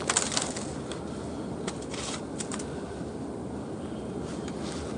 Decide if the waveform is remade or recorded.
recorded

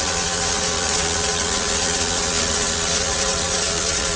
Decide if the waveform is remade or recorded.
remade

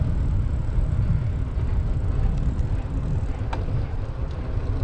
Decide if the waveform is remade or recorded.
recorded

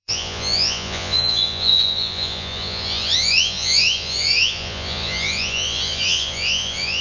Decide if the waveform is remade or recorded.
remade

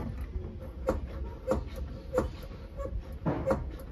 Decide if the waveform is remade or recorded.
recorded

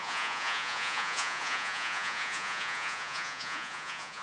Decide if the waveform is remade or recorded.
remade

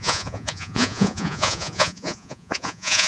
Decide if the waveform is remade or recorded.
remade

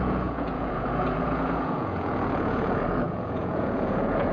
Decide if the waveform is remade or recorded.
remade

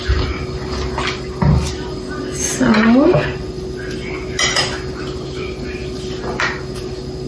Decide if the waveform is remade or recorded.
recorded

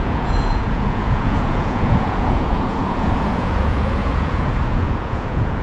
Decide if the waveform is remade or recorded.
remade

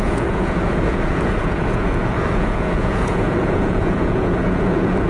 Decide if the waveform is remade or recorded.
remade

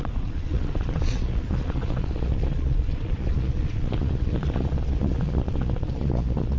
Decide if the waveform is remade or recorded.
remade